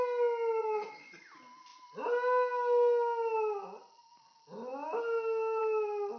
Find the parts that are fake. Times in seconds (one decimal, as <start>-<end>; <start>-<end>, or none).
0.6-1.2